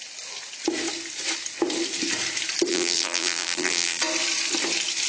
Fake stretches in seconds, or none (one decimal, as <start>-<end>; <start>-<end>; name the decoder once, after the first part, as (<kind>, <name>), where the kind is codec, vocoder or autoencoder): 2.7-4.0 (vocoder, BigVGAN v2)